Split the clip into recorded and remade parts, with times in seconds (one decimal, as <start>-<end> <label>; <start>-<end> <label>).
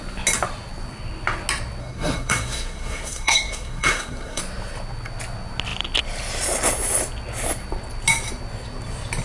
0.0-1.8 recorded; 1.8-4.4 remade; 4.4-9.2 recorded